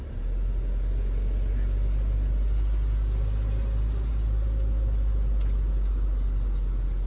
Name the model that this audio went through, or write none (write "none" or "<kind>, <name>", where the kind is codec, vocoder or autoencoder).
none